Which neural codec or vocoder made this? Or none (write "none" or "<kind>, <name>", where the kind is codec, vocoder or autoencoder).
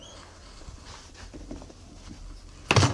none